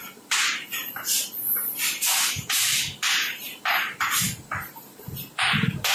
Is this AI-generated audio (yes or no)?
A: yes